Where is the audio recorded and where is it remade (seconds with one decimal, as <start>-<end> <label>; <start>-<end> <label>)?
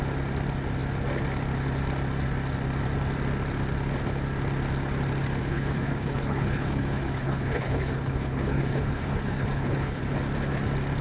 0.0-5.4 recorded; 5.4-10.0 remade; 10.0-11.0 recorded